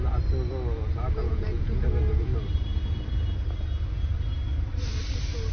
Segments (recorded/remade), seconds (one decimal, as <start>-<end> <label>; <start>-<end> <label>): 0.0-1.2 recorded; 1.2-1.7 remade; 1.7-5.5 recorded